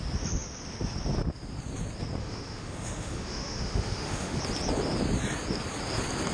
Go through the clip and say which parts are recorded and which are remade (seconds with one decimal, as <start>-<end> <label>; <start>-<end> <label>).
0.0-2.2 recorded; 2.2-4.4 remade; 4.4-6.3 recorded